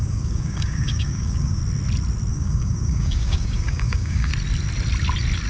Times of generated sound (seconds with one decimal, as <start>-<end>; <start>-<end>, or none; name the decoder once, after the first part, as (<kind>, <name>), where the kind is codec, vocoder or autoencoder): 0.0-1.6 (codec, DAC); 2.3-4.3